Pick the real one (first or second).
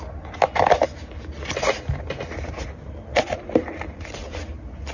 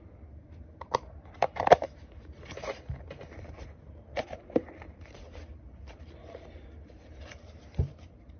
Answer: first